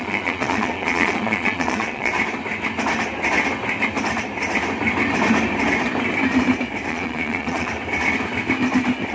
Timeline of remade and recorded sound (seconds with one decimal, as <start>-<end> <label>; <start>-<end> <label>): 0.0-2.1 remade; 2.1-6.9 recorded; 6.9-7.7 remade; 7.7-9.1 recorded